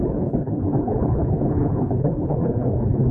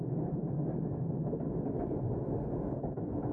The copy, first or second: first